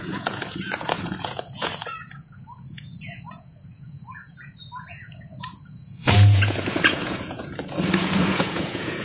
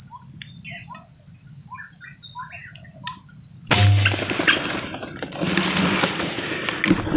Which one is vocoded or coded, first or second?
first